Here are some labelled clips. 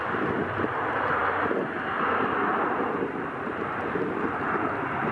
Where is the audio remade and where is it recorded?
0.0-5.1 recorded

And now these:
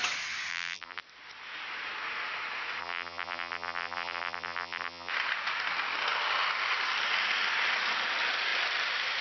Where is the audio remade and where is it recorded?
0.0-0.5 recorded; 0.5-1.0 remade; 1.0-2.8 recorded; 2.8-5.1 remade; 5.1-9.2 recorded

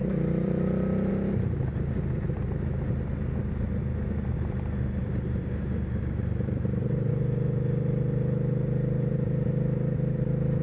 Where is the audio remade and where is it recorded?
0.0-1.1 remade; 1.1-5.0 recorded; 5.0-7.1 remade; 7.1-10.6 recorded

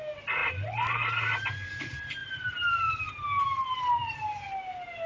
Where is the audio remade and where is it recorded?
0.0-3.7 recorded; 3.7-4.3 remade; 4.3-5.1 recorded

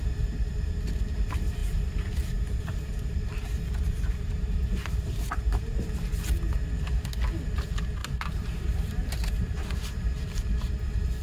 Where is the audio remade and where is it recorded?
0.0-1.6 recorded; 1.6-5.9 remade; 5.9-8.0 recorded; 8.0-10.7 remade; 10.7-11.2 recorded

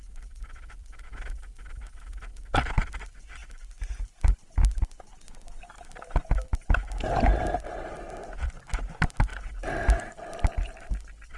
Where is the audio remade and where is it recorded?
0.0-3.4 remade; 3.4-7.1 recorded; 7.1-9.3 remade; 9.3-10.8 recorded; 10.8-11.4 remade

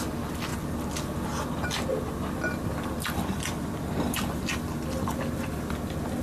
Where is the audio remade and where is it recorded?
0.0-0.5 remade; 0.5-2.0 recorded; 2.0-6.2 remade

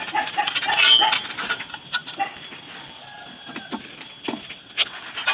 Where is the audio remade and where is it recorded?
0.0-2.0 recorded; 2.0-4.1 remade; 4.1-5.3 recorded